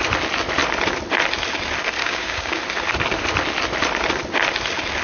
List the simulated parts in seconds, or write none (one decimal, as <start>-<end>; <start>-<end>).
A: 2.0-2.6

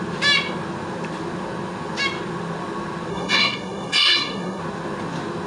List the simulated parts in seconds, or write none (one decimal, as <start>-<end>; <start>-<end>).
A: 3.1-4.6

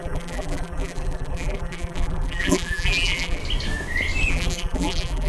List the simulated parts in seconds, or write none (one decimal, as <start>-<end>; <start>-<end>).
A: 0.0-3.4; 4.3-5.3

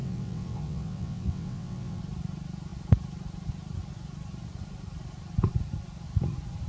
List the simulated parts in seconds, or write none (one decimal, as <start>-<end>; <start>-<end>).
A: 0.0-2.0

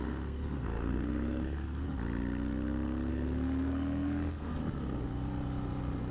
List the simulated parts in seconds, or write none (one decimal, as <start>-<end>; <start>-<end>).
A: 0.0-1.8; 3.1-4.6

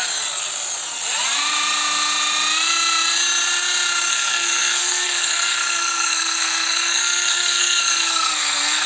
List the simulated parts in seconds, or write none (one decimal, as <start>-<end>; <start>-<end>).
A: 4.1-8.9